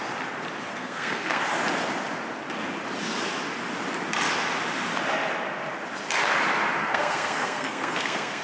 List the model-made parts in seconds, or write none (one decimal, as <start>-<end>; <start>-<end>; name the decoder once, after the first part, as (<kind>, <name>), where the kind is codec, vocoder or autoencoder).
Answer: 0.7-1.4 (codec, SNAC); 6.8-8.4